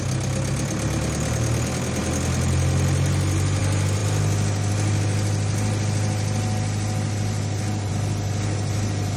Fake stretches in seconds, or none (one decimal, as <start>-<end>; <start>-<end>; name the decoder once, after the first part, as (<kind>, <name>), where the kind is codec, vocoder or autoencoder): none

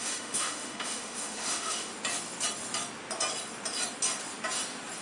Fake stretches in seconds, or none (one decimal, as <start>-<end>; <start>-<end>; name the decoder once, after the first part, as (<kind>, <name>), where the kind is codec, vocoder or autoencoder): 0.0-1.9 (autoencoder, DAC-VAE)

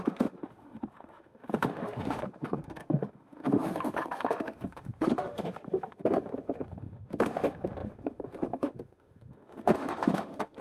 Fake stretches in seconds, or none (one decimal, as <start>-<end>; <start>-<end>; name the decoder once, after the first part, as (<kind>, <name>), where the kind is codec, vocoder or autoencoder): 0.0-10.6 (autoencoder, DAC-VAE)